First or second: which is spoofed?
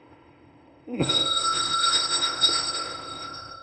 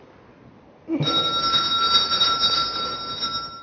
first